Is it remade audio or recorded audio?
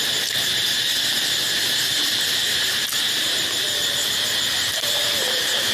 remade